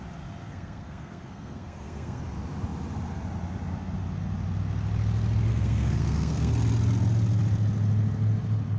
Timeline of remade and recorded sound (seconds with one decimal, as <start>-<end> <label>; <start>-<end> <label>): 0.0-0.4 recorded; 0.4-2.2 remade; 2.2-5.5 recorded; 5.5-6.5 remade; 6.5-8.8 recorded